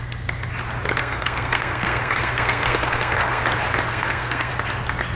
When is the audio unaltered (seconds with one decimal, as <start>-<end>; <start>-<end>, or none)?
0.0-1.0; 3.4-3.9; 4.5-5.2